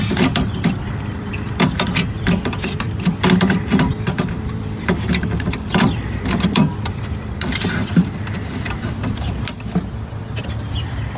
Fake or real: fake